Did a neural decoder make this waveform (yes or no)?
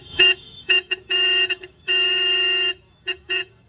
yes